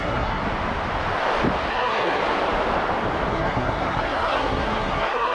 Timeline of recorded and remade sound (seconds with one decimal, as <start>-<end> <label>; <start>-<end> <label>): 0.0-0.4 remade; 0.4-1.7 recorded; 1.7-2.2 remade; 2.2-3.3 recorded; 3.3-5.3 remade